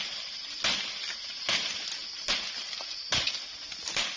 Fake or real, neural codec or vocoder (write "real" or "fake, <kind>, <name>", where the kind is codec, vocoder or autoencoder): real